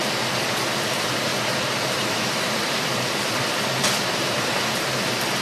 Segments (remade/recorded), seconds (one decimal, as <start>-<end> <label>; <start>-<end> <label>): 0.0-1.3 recorded; 1.3-3.3 remade; 3.3-4.5 recorded; 4.5-5.4 remade